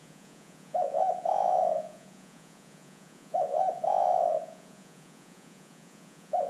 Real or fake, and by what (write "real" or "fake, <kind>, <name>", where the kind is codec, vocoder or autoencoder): fake, vocoder, Vocos